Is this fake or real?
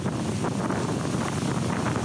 real